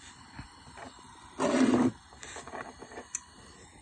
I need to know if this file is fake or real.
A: real